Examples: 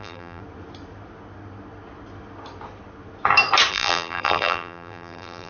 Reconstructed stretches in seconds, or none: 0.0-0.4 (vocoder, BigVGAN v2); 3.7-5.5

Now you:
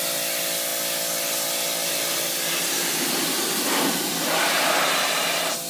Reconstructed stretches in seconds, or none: none

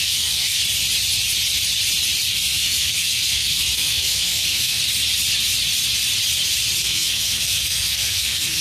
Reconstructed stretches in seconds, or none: 0.0-0.6 (codec, SNAC); 2.3-4.8; 6.8-8.6

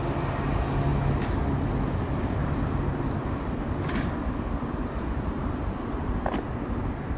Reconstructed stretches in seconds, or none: none